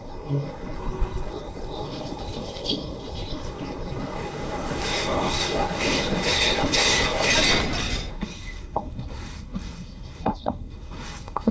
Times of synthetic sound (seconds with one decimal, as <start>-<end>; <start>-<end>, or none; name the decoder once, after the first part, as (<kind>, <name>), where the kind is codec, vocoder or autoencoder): 0.0-7.3 (codec, SNAC); 8.1-11.5